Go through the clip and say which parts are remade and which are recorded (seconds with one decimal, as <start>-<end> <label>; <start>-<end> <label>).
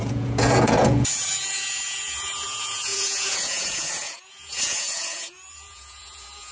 0.0-6.5 remade